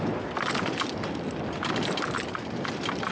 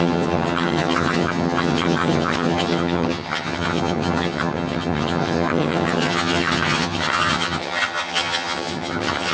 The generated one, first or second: second